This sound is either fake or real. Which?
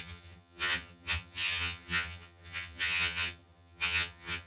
fake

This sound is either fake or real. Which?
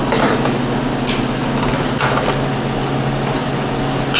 real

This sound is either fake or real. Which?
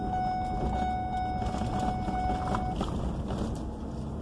real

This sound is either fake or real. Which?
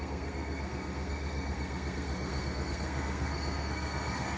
fake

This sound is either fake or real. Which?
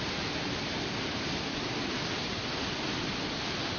fake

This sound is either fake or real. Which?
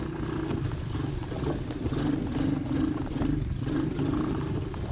real